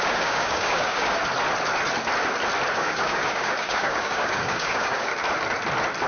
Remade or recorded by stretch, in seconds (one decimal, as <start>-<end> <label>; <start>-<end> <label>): 0.0-1.2 remade; 1.2-2.7 recorded; 2.7-5.1 remade; 5.1-6.1 recorded